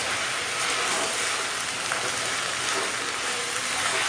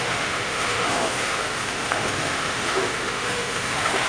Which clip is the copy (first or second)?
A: second